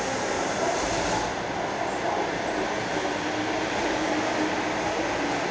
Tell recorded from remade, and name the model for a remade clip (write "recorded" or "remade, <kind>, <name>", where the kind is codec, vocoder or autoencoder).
recorded